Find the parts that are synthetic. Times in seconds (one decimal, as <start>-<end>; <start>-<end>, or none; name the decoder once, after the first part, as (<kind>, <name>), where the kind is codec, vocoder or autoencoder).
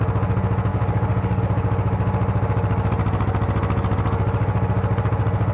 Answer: 0.7-1.4 (codec, DAC)